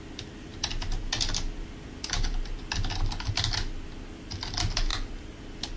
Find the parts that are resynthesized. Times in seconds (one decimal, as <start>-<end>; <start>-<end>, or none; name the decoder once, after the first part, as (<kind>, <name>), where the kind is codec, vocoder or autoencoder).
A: none